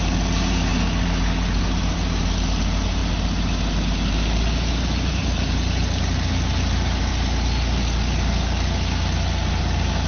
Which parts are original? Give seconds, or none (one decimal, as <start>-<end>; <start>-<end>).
0.7-1.6; 3.0-5.1; 7.1-10.1